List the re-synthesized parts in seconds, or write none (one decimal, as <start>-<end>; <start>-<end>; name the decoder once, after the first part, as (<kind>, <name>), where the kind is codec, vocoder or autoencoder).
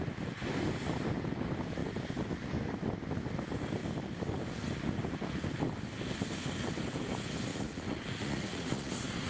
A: 7.5-8.9 (vocoder, Vocos)